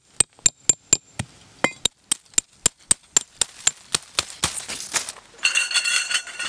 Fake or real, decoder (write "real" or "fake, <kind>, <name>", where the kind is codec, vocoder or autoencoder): real